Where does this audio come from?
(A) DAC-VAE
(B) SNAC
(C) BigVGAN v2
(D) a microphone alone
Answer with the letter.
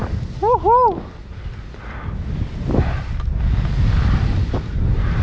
D